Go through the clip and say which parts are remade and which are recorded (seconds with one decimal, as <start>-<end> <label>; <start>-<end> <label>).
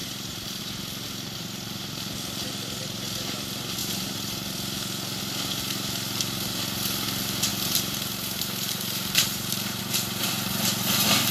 0.0-0.6 remade; 0.6-7.5 recorded; 7.5-9.8 remade; 9.8-11.3 recorded